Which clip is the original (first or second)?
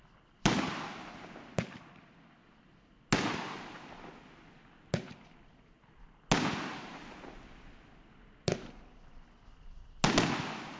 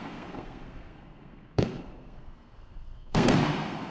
first